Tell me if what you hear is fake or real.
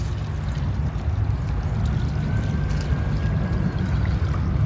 real